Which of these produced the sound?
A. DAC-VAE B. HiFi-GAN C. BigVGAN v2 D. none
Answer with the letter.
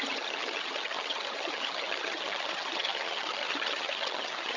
B